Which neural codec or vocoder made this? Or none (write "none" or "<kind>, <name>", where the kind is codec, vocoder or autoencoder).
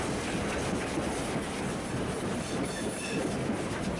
none